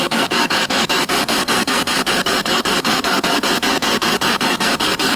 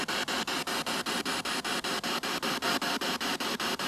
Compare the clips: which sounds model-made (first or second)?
first